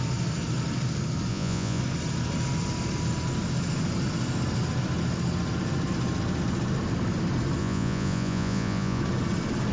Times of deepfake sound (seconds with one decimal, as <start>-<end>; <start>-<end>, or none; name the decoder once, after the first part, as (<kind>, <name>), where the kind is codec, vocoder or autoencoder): 1.3-1.8 (vocoder, Vocos); 7.6-9.0